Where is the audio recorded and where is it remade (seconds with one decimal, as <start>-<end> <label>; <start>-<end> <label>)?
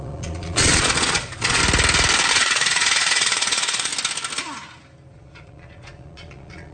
0.0-1.6 remade; 1.6-2.3 recorded; 2.3-3.9 remade; 3.9-5.1 recorded; 5.1-6.7 remade